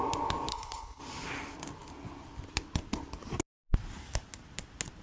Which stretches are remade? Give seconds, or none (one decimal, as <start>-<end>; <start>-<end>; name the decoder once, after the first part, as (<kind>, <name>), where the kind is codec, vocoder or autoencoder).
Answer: 0.5-1.0 (codec, HILCodec)